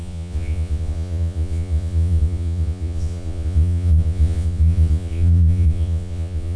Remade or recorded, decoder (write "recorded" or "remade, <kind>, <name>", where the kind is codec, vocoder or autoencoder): remade, vocoder, Vocos